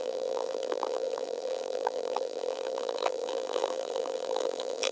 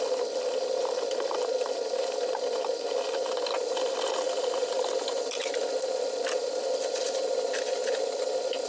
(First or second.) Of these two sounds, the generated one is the first